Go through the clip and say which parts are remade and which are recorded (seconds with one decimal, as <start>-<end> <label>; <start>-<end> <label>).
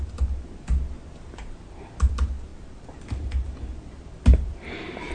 0.0-5.1 recorded